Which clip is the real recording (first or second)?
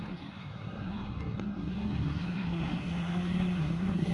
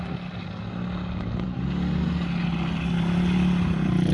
second